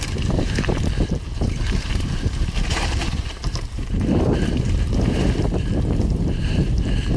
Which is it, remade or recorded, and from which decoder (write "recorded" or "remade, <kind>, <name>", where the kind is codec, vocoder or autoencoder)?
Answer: remade, vocoder, BigVGAN v2